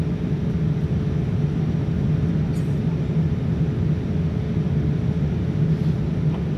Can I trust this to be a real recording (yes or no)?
yes